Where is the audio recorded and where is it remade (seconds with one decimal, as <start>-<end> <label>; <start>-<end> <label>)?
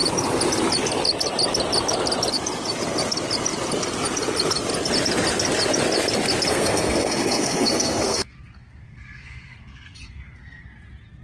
0.0-6.5 recorded; 6.5-10.6 remade; 10.6-11.2 recorded